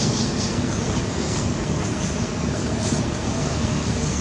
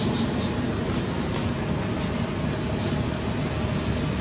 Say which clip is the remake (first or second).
first